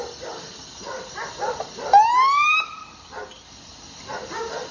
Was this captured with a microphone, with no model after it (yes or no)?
yes